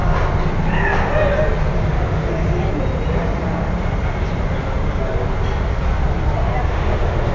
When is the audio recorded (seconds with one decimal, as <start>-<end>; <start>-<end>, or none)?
0.0-1.9; 2.3-6.7